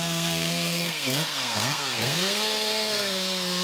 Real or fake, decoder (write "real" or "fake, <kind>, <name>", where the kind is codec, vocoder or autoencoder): fake, codec, SNAC